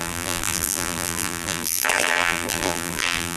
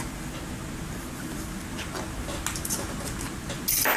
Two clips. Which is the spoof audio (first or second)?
first